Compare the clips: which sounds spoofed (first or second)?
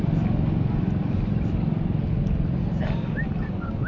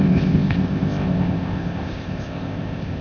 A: second